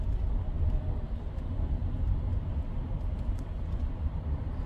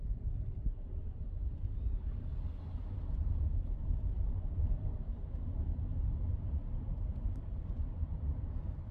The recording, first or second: first